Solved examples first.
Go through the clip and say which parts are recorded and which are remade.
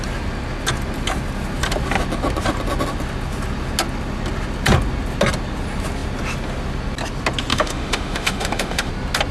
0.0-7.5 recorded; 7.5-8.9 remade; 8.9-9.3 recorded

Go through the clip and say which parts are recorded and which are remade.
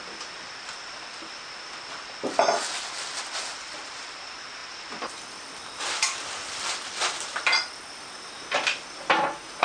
0.0-4.6 recorded; 4.6-5.5 remade; 5.5-9.6 recorded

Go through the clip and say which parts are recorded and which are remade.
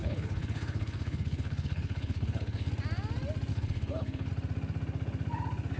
0.0-2.7 remade; 2.7-3.5 recorded; 3.5-4.3 remade; 4.3-5.8 recorded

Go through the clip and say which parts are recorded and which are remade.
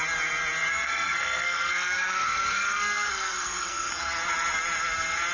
0.0-0.7 recorded; 0.7-3.9 remade; 3.9-5.3 recorded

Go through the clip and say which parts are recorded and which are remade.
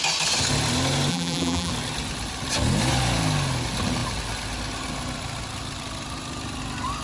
0.0-1.1 recorded; 1.1-1.7 remade; 1.7-7.0 recorded